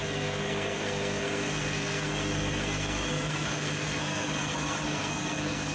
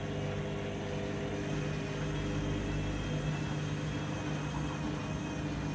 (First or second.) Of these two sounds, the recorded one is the second